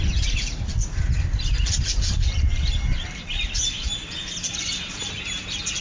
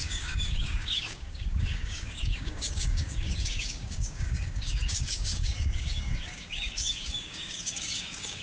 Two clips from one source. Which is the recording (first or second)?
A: first